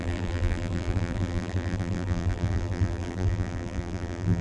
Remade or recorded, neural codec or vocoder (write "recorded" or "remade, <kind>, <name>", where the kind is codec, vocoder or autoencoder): remade, vocoder, BigVGAN v2